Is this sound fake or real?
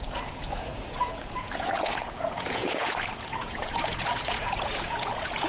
fake